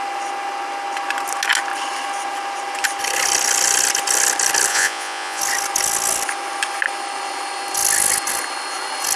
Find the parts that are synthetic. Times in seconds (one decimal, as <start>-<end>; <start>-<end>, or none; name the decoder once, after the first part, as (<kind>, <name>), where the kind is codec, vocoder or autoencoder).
4.7-5.4 (vocoder, Vocos)